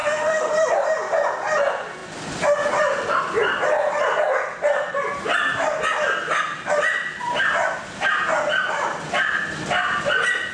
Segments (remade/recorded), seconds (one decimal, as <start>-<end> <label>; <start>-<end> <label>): 0.0-0.5 remade; 0.5-10.5 recorded